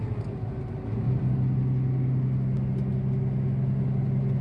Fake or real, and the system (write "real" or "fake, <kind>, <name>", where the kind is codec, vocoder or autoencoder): real